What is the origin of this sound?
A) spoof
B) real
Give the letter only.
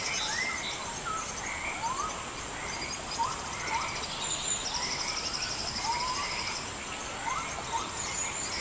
B